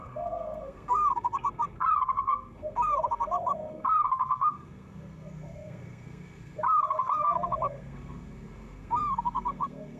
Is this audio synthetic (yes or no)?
yes